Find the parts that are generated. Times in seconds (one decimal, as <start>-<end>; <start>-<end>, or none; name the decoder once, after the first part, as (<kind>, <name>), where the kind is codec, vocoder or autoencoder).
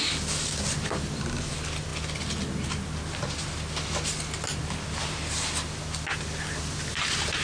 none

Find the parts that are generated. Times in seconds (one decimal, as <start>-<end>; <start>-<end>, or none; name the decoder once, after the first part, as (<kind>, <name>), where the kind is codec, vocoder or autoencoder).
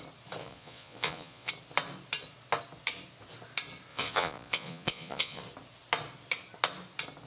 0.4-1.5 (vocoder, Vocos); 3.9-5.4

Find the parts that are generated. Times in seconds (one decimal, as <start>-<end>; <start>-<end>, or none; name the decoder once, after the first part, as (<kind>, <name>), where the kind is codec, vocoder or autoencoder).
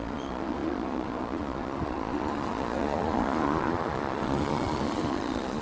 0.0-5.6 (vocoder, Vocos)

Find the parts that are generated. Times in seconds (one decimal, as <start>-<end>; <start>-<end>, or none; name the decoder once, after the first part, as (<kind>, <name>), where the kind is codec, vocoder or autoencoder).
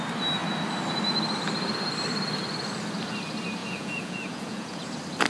3.6-4.8 (vocoder, Vocos)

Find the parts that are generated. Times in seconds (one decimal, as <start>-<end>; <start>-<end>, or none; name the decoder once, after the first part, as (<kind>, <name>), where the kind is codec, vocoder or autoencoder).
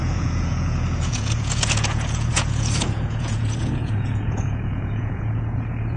0.0-6.0 (vocoder, Vocos)